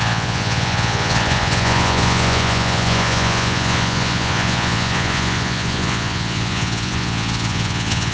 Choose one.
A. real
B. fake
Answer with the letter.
B